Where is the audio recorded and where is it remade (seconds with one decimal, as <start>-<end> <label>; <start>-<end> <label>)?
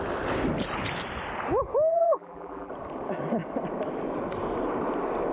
0.0-1.9 recorded; 1.9-2.7 remade; 2.7-5.3 recorded